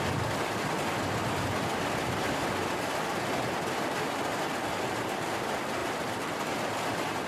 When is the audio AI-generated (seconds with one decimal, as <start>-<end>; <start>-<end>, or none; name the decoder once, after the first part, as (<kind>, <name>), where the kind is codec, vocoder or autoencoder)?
5.8-6.6 (vocoder, BigVGAN v2)